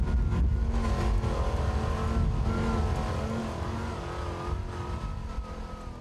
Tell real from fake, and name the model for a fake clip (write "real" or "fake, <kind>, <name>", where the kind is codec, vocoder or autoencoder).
real